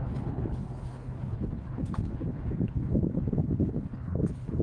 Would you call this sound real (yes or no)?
no